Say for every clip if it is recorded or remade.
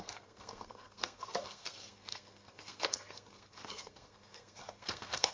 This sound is remade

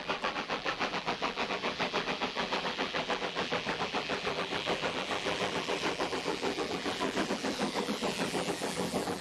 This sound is remade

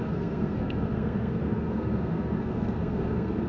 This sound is remade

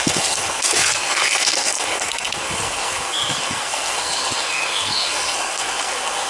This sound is remade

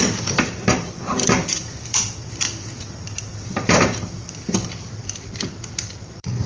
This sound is remade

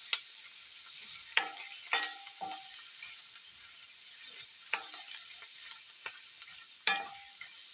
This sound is remade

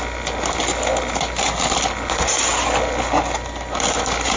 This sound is recorded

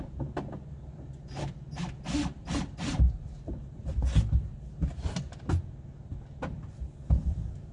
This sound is recorded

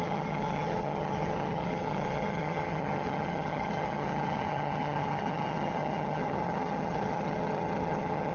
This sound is remade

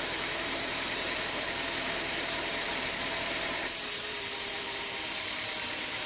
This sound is remade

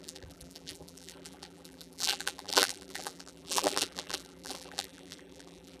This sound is remade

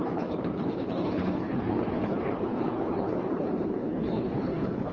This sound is remade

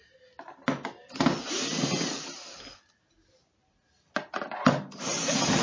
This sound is recorded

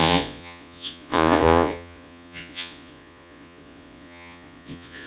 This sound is remade